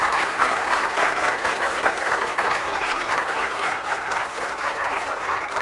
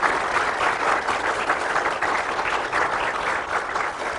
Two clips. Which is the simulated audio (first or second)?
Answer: first